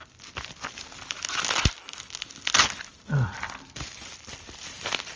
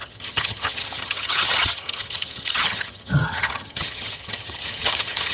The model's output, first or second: second